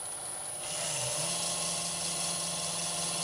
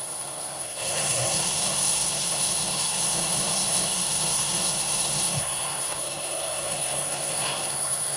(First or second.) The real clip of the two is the first